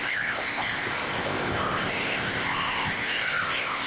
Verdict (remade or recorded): remade